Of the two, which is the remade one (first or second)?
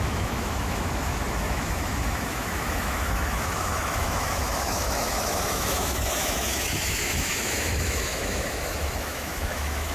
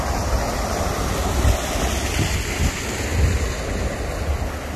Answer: first